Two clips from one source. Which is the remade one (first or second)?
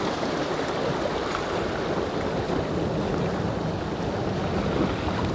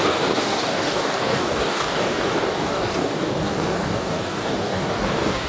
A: second